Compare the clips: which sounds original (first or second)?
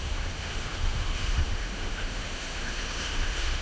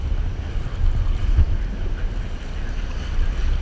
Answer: second